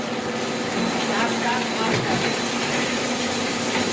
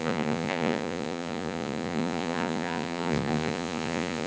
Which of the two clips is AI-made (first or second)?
second